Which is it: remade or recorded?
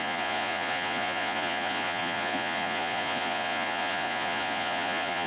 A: remade